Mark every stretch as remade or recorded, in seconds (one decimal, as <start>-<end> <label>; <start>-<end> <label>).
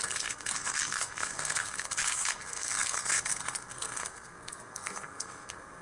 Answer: 0.0-5.8 remade